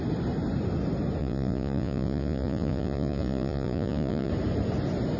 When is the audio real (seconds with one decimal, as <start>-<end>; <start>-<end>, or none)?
0.0-1.2; 4.3-5.2